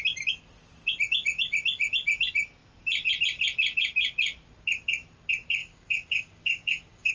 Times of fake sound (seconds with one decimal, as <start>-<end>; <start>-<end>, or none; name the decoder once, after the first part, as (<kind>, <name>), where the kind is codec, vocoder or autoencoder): 5.6-7.1 (codec, DAC)

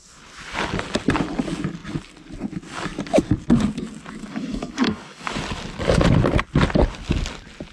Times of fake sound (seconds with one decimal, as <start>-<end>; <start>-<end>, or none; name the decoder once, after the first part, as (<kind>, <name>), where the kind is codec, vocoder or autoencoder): 4.2-5.3 (codec, DAC)

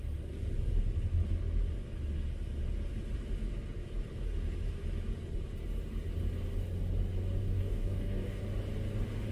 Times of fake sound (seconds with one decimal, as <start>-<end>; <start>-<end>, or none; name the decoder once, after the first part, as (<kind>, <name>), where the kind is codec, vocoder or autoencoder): 7.4-8.4 (codec, DAC)